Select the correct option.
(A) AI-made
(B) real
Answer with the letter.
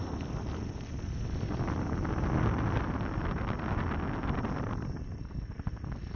B